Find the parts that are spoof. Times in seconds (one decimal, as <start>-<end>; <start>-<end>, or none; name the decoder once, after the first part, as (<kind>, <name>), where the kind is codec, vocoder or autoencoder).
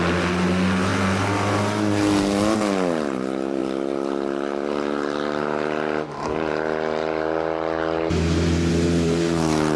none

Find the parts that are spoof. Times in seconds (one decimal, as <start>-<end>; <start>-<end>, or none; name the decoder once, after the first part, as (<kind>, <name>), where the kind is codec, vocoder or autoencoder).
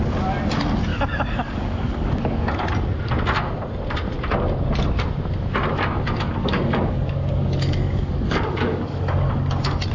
0.9-2.5 (codec, DAC); 6.4-9.5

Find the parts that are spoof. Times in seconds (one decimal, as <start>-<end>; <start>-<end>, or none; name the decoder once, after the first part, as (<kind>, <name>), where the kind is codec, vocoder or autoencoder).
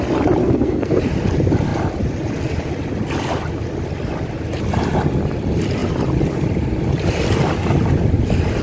0.4-1.0 (codec, SNAC)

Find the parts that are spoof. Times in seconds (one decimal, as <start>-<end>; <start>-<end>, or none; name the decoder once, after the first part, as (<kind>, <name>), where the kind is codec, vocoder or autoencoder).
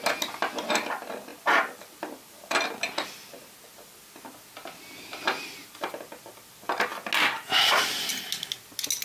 none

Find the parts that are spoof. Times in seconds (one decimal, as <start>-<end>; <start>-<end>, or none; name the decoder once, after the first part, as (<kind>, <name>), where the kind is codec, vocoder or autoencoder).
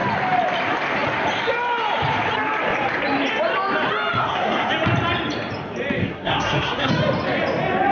4.2-4.7 (codec, SNAC); 6.0-6.9